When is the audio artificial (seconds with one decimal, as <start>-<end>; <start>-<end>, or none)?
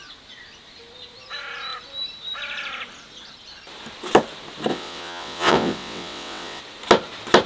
4.7-6.6